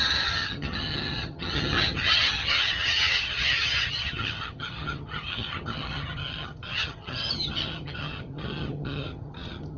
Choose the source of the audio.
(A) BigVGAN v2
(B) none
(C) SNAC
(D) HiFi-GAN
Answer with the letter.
D